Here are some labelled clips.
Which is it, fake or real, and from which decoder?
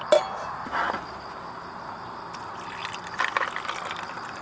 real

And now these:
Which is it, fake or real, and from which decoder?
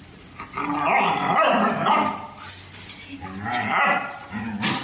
real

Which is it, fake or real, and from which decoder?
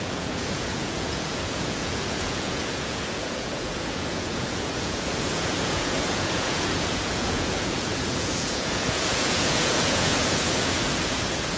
fake, vocoder, Vocos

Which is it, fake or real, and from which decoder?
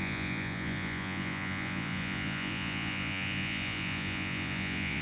fake, vocoder, Vocos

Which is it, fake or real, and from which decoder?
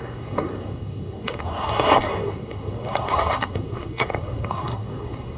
fake, codec, SNAC